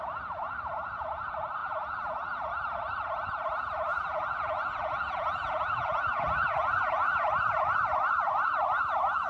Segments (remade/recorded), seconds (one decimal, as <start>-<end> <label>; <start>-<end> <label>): 0.0-1.6 recorded; 1.6-2.5 remade; 2.5-3.9 recorded; 3.9-7.3 remade; 7.3-9.3 recorded